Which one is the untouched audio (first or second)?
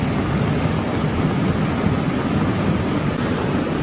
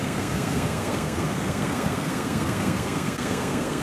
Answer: first